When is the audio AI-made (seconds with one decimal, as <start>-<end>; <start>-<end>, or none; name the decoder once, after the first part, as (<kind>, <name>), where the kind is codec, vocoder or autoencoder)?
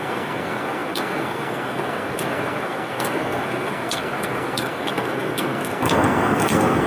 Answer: 0.0-6.9 (codec, SNAC)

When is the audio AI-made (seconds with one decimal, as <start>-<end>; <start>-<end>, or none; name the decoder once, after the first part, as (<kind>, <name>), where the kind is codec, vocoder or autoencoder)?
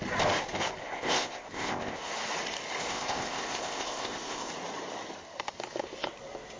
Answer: 0.8-2.1 (codec, ZipCodec); 2.8-4.5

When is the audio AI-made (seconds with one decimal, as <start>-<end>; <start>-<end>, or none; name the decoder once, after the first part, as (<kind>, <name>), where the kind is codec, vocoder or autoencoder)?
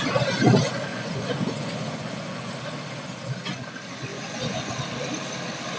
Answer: 0.9-2.5 (vocoder, Vocos); 4.1-4.7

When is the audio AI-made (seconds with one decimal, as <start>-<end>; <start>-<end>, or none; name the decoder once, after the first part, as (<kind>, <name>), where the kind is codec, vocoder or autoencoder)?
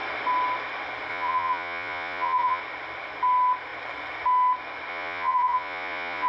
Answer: 1.1-2.6 (vocoder, Vocos); 4.9-6.3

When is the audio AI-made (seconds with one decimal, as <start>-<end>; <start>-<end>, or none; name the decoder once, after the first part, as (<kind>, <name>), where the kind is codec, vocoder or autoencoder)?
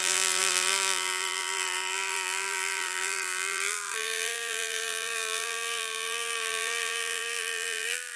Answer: 0.0-8.2 (vocoder, BigVGAN v2)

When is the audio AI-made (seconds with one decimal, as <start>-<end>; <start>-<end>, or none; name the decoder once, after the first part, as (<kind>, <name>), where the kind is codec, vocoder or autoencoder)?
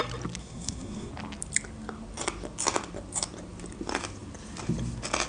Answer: 0.4-1.1 (codec, SNAC)